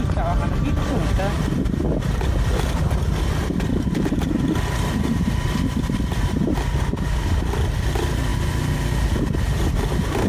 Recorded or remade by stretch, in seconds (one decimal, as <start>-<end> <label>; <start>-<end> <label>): 0.0-10.3 recorded